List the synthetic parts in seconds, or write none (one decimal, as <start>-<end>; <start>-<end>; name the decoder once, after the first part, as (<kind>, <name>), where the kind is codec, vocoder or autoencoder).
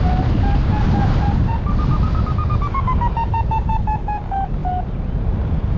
none